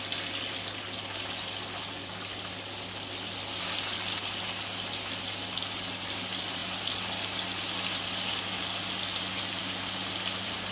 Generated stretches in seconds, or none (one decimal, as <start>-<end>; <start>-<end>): none